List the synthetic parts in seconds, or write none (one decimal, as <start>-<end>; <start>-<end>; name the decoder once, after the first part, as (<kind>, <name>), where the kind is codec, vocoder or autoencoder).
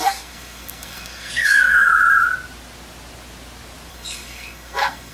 0.0-1.9 (codec, SNAC); 3.9-5.1